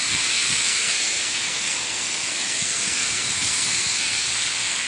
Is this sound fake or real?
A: fake